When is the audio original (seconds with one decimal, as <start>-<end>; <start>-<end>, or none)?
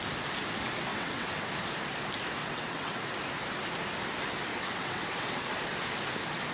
0.0-0.9; 1.5-2.4; 3.0-4.5; 5.5-6.5